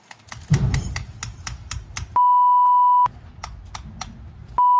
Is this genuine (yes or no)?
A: yes